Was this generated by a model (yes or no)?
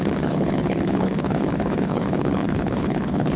yes